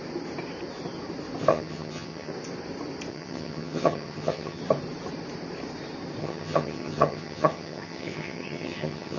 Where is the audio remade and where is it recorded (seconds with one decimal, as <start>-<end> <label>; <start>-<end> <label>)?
0.0-1.5 recorded; 1.5-2.3 remade; 2.3-3.1 recorded; 3.1-4.6 remade; 4.6-6.2 recorded; 6.2-9.2 remade